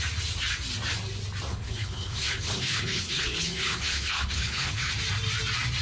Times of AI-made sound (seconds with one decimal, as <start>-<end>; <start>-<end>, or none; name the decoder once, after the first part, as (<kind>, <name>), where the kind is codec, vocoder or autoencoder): 1.5-4.9 (codec, HILCodec)